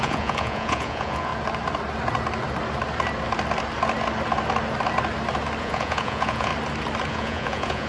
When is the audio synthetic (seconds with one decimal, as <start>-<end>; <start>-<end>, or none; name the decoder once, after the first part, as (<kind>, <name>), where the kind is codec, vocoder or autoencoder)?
0.0-1.3 (vocoder, Vocos); 5.6-6.5; 7.1-7.9